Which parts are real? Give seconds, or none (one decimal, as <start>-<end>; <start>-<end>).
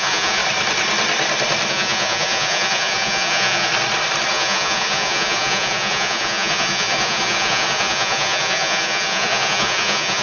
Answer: 0.4-1.7; 3.7-4.3